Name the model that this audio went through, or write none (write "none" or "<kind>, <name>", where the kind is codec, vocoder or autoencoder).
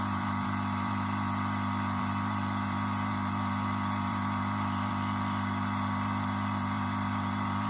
vocoder, BigVGAN v2